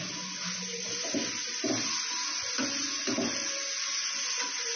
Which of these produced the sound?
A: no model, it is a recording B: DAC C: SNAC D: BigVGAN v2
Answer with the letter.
A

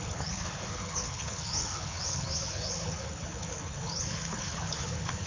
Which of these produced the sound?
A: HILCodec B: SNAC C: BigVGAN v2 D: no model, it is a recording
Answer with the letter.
A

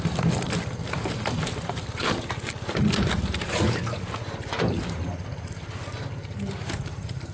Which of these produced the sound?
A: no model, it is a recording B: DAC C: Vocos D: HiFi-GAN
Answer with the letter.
A